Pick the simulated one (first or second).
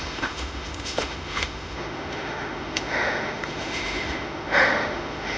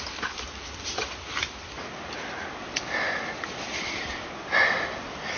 first